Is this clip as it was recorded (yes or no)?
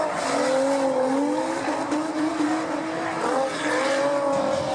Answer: yes